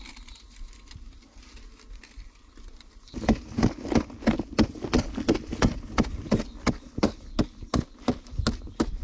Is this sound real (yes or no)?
yes